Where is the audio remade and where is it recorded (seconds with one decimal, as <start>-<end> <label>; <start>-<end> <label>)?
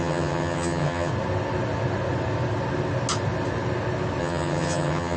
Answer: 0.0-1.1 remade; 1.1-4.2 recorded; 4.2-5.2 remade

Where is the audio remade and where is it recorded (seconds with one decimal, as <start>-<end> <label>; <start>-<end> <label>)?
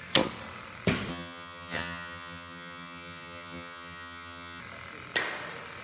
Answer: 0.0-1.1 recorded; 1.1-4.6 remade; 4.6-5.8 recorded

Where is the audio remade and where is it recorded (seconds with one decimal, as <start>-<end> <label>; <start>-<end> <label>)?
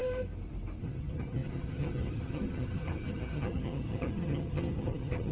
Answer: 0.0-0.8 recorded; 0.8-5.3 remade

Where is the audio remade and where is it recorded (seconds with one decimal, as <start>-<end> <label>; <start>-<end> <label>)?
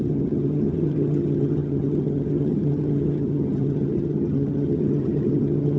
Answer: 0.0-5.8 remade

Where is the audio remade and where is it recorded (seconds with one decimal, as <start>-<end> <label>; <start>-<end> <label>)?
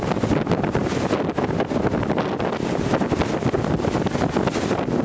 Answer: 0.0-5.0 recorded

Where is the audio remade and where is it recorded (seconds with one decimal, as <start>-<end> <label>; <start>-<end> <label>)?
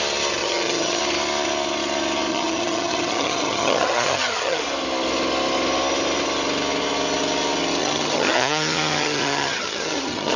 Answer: 0.0-0.4 recorded; 0.4-1.0 remade; 1.0-2.3 recorded; 2.3-4.6 remade; 4.6-7.8 recorded; 7.8-10.4 remade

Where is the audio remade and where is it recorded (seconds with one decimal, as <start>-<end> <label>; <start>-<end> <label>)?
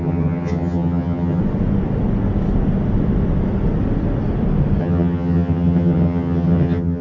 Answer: 0.0-1.4 remade; 1.4-4.8 recorded; 4.8-7.0 remade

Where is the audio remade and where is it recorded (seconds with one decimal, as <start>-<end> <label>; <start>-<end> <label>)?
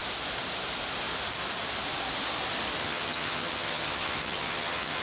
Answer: 0.0-2.8 recorded; 2.8-5.0 remade